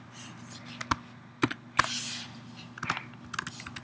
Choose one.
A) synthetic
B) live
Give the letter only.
B